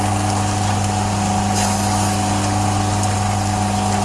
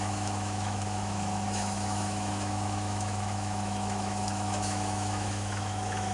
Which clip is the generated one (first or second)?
second